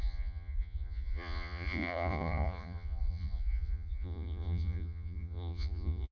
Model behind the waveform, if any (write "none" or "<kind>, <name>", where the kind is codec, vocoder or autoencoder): vocoder, Vocos